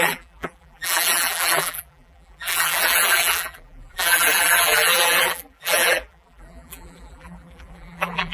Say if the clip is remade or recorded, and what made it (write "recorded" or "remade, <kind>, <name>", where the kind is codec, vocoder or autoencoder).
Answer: remade, vocoder, BigVGAN v2